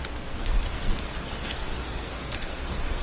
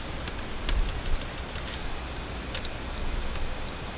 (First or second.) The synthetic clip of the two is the first